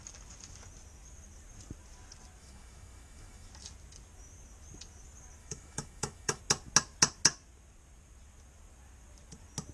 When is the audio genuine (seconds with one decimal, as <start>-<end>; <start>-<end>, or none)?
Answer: 0.0-2.4; 3.5-5.4; 6.4-9.7